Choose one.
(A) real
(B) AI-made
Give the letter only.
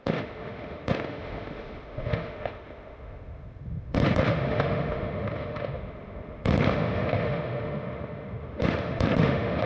B